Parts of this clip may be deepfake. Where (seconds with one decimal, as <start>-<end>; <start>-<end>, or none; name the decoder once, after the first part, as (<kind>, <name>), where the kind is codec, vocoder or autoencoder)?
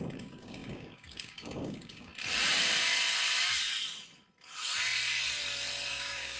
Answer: 0.0-2.1 (codec, DAC); 5.9-6.4